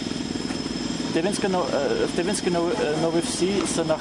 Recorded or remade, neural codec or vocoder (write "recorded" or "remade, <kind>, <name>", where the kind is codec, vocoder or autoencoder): recorded